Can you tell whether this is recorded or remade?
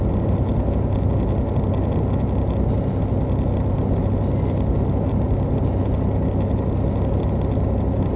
recorded